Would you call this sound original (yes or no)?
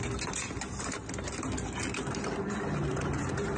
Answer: yes